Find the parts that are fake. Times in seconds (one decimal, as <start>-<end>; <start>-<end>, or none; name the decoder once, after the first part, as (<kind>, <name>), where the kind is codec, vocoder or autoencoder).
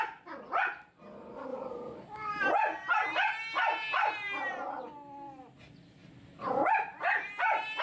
1.5-2.5 (vocoder, BigVGAN v2); 6.0-6.6